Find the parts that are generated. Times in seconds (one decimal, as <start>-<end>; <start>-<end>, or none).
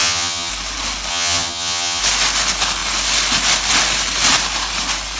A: 0.0-0.5; 1.1-2.0